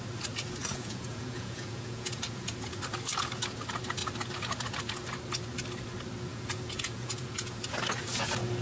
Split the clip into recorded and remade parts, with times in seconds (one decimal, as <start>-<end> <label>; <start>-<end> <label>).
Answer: 0.0-0.6 recorded; 0.6-2.8 remade; 2.8-6.3 recorded; 6.3-7.6 remade; 7.6-8.6 recorded